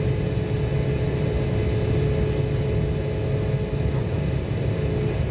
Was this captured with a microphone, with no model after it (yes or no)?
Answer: yes